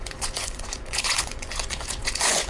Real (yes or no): no